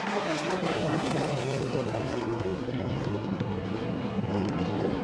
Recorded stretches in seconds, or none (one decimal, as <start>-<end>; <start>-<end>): none